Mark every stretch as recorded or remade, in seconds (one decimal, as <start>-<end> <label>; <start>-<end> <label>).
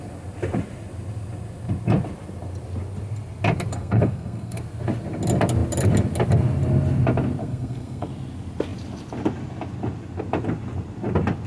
0.0-3.7 recorded; 3.7-4.6 remade; 4.6-7.4 recorded; 7.4-8.1 remade; 8.1-11.5 recorded